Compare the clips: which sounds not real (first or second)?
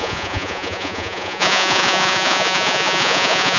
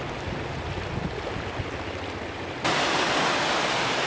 first